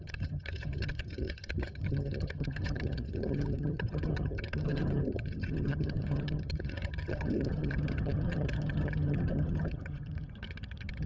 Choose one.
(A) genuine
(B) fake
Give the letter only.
B